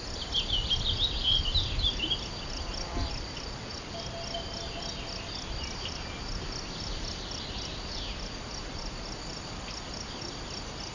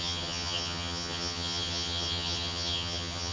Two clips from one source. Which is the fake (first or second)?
second